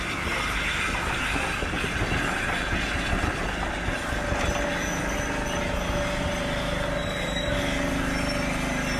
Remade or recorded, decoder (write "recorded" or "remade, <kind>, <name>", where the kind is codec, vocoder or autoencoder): recorded